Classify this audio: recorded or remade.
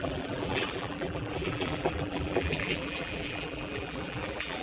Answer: remade